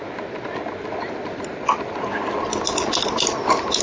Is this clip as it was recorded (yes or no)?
yes